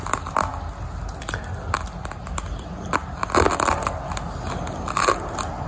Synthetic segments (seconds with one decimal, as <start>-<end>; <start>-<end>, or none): none